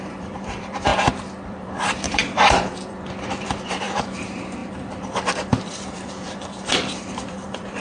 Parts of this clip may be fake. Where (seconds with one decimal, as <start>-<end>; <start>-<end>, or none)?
0.0-0.9; 1.5-7.8